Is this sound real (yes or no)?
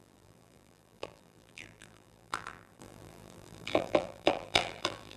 no